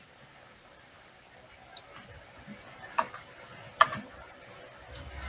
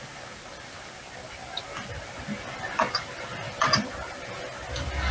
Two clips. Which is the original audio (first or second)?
second